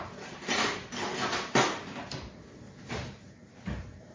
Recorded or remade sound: remade